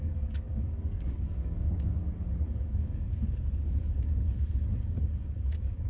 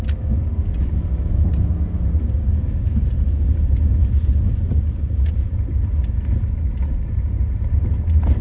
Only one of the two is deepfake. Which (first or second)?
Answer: first